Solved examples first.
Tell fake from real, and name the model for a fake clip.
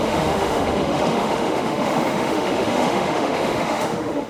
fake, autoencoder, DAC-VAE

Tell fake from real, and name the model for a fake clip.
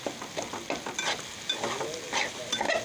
real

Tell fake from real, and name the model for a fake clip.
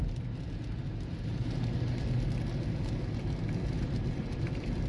real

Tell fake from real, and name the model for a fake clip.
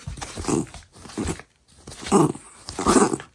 real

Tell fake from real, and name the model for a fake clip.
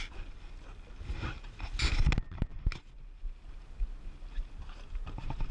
real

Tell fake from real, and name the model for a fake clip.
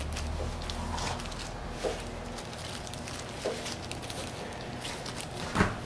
real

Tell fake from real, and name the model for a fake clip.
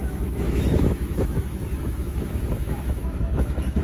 fake, autoencoder, DAC-VAE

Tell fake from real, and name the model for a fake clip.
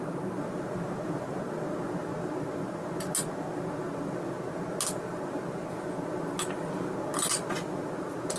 real